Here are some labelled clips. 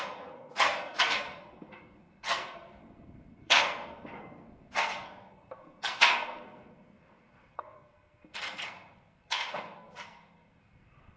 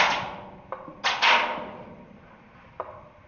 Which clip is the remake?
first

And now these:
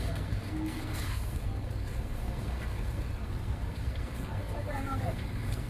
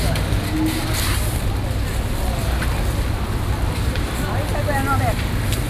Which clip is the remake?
first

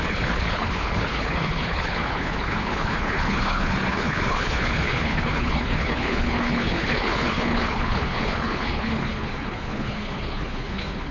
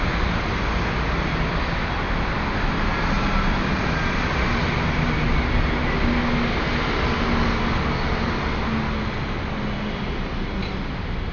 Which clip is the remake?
first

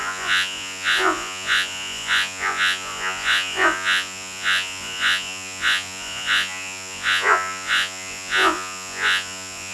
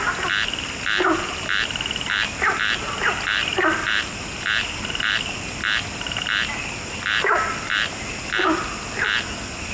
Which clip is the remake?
first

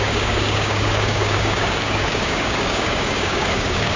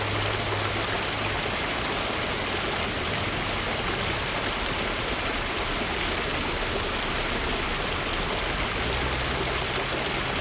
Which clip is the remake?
first